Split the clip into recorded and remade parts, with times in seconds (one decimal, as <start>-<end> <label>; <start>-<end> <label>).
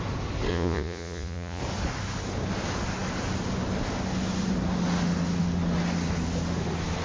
0.0-0.5 recorded; 0.5-1.6 remade; 1.6-7.0 recorded